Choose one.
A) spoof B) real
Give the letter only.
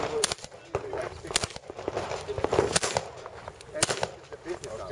B